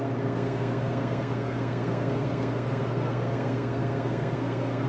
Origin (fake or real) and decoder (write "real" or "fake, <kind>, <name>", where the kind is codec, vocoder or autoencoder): fake, codec, SNAC